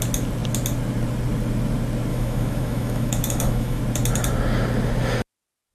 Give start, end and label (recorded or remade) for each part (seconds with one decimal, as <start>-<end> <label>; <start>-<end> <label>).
0.0-2.1 recorded; 2.1-3.8 remade; 3.8-5.7 recorded